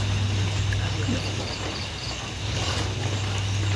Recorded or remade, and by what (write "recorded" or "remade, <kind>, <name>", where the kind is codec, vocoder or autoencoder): recorded